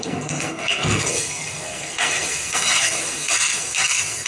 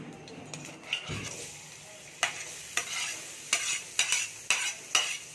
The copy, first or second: first